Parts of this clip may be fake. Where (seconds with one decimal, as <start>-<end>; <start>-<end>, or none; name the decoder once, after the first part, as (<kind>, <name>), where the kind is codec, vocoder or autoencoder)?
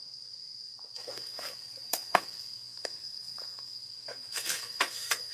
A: 0.0-5.3 (codec, SNAC)